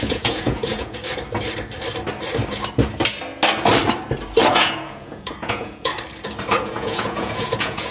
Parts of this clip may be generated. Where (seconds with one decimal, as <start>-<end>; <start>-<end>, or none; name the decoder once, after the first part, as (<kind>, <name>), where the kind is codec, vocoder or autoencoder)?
0.0-1.0 (vocoder, Vocos); 4.5-5.9; 6.6-7.9